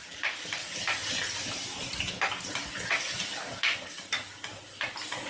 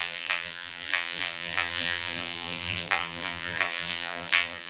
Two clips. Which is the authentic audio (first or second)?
first